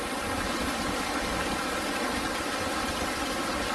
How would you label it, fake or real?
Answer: real